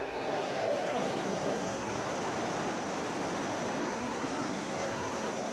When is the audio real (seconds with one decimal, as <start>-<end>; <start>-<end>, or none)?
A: 2.1-3.8